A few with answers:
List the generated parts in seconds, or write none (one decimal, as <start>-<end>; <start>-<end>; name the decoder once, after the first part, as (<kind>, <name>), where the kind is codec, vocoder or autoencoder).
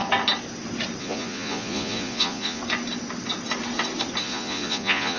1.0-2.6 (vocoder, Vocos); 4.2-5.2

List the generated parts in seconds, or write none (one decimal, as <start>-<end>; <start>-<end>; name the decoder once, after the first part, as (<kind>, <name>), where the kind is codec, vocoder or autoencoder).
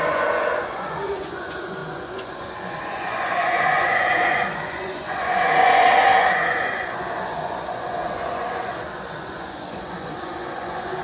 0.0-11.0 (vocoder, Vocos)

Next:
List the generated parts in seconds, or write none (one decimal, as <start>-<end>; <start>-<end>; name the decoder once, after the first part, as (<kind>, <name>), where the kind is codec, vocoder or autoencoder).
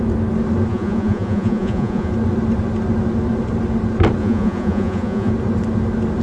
0.7-2.1 (vocoder, Vocos); 4.2-5.3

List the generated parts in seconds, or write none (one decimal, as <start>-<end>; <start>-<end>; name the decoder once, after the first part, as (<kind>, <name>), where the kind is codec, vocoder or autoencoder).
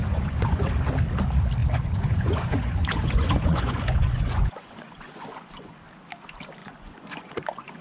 0.0-0.7 (vocoder, Vocos); 1.6-5.7; 6.6-7.8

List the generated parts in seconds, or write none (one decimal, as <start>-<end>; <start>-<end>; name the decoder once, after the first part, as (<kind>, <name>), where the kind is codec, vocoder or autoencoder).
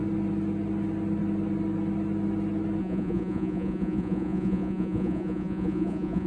2.8-6.3 (vocoder, Vocos)